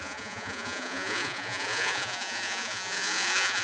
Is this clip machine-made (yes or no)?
yes